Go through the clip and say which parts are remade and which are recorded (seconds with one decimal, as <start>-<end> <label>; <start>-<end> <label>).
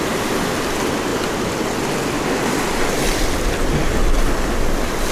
0.0-5.1 recorded